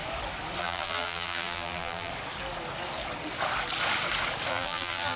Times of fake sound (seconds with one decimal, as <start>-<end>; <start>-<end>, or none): 0.6-2.1; 4.5-5.2